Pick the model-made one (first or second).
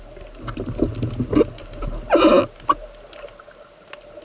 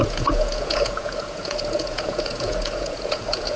second